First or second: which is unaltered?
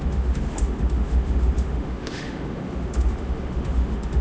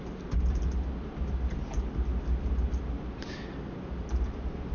second